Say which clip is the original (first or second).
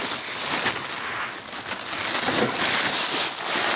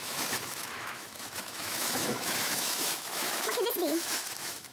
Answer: first